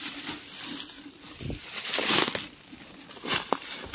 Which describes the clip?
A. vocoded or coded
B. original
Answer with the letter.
B